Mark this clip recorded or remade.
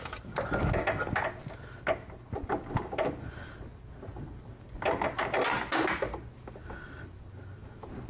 recorded